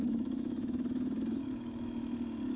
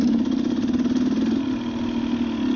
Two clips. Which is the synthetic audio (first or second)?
first